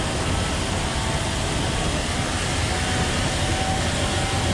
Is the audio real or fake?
real